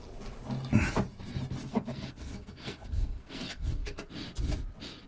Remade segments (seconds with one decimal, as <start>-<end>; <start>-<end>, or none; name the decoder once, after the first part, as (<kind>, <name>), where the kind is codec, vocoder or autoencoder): 1.6-4.1 (codec, SNAC)